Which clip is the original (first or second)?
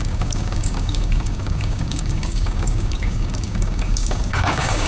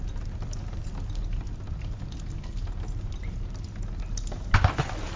second